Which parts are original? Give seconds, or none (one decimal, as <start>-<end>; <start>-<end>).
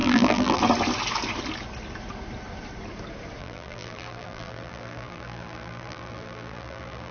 0.6-3.4